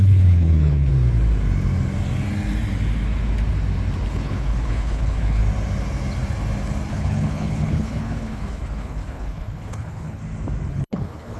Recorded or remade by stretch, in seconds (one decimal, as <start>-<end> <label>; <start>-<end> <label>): 0.0-0.9 remade; 0.9-4.1 recorded; 4.1-5.4 remade; 5.4-6.9 recorded; 6.9-10.2 remade; 10.2-10.7 recorded; 10.7-11.4 remade